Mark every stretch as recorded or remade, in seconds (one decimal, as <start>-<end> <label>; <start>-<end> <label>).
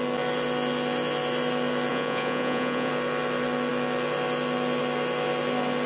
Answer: 0.0-1.9 recorded; 1.9-2.9 remade; 2.9-5.9 recorded